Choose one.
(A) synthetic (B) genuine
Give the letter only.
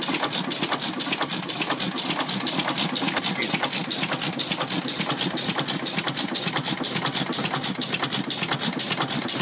B